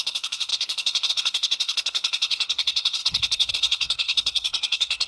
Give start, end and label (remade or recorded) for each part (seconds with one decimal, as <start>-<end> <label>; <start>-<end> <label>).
0.0-5.1 remade